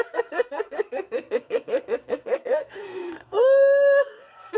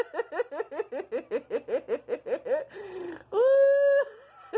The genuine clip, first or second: second